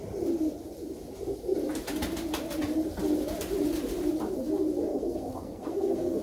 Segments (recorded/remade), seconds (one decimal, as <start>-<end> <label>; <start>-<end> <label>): 0.0-4.9 recorded; 4.9-6.2 remade